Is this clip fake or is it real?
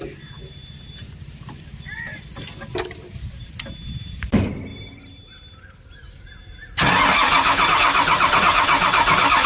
fake